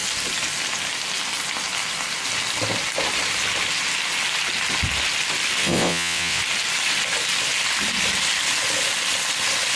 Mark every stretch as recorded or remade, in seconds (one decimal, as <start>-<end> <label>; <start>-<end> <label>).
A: 0.0-5.6 recorded; 5.6-6.4 remade; 6.4-9.8 recorded